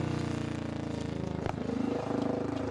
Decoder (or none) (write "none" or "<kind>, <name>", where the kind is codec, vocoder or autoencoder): none